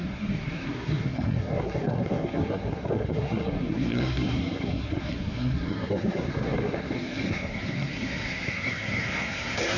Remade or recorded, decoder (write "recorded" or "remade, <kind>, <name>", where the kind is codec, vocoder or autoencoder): remade, codec, SNAC